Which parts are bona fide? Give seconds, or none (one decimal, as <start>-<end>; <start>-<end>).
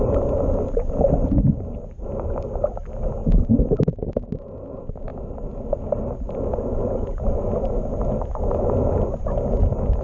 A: 0.0-10.0